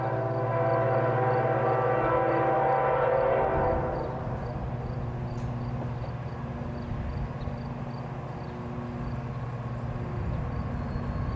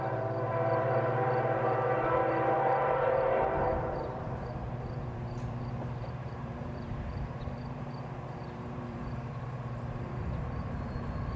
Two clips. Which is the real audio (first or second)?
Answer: first